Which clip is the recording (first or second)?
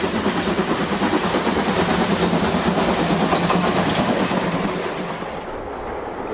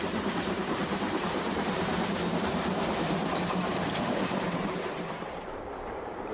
first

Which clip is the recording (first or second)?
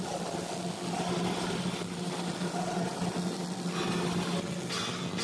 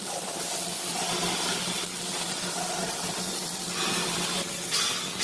first